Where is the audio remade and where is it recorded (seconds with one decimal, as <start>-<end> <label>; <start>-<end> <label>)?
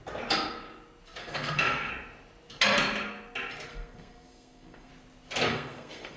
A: 0.0-1.2 recorded; 1.2-1.9 remade; 1.9-3.7 recorded; 3.7-4.9 remade; 4.9-5.5 recorded; 5.5-6.2 remade